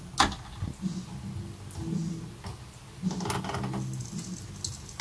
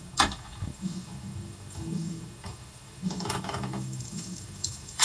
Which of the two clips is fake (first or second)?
second